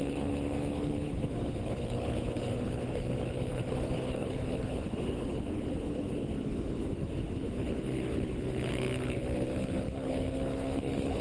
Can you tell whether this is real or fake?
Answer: fake